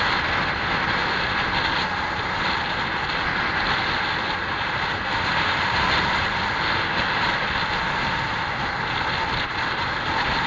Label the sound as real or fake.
real